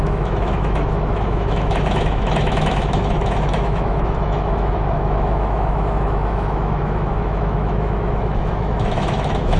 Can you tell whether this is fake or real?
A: fake